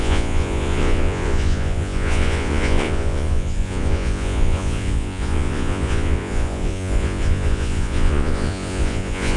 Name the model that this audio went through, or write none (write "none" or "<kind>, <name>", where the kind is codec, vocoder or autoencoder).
vocoder, Vocos